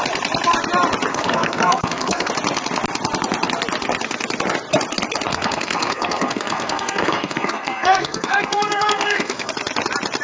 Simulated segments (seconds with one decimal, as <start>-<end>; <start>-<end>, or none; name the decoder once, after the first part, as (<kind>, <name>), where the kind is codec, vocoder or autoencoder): 1.1-2.3 (codec, SNAC); 5.3-9.5